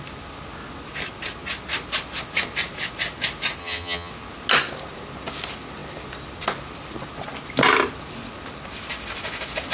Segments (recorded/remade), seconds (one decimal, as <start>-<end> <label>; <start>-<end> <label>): 0.0-3.6 recorded; 3.6-4.1 remade; 4.1-9.7 recorded

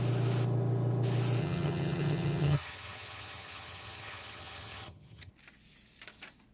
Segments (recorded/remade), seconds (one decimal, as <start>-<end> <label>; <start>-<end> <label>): 0.0-1.4 recorded; 1.4-5.3 remade; 5.3-6.5 recorded